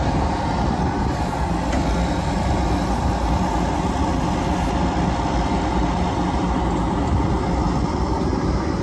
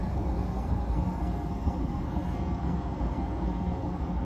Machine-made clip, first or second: second